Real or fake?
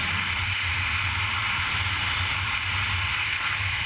real